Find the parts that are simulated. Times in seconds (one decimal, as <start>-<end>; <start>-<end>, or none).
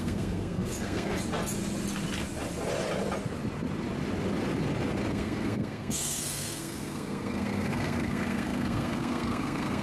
0.0-1.1; 5.1-9.8